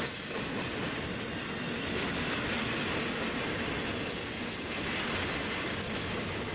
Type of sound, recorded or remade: recorded